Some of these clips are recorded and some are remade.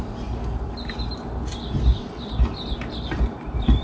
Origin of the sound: recorded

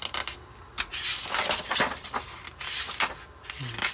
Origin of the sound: recorded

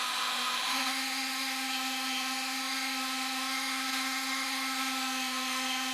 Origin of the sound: remade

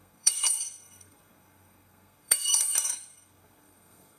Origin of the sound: remade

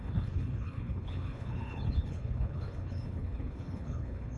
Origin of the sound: remade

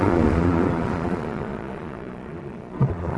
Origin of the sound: remade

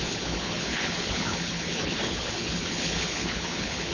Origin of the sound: remade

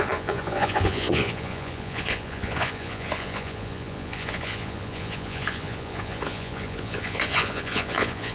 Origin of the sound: remade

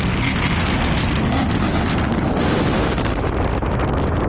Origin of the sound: recorded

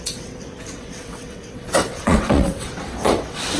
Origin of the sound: remade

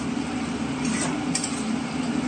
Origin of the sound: recorded